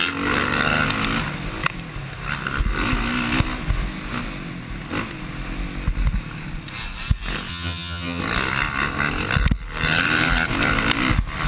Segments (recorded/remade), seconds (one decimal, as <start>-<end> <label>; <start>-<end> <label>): 0.0-7.5 recorded; 7.5-8.2 remade; 8.2-11.5 recorded